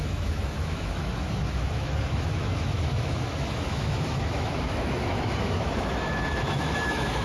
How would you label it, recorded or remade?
remade